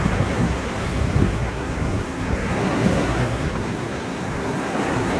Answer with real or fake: fake